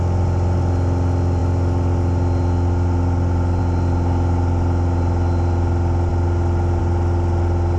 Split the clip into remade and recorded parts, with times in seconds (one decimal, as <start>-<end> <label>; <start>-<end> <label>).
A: 0.0-7.8 recorded